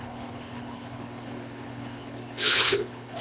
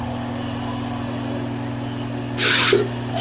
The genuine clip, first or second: second